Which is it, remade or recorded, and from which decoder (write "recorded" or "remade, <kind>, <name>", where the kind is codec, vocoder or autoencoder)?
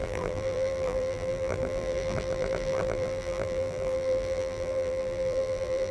remade, vocoder, BigVGAN v2